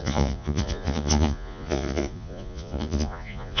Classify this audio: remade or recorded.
remade